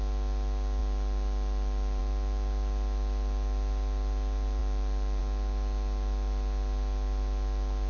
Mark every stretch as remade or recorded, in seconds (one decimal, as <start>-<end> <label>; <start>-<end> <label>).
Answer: 0.0-7.9 recorded